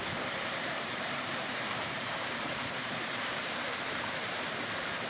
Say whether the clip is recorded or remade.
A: remade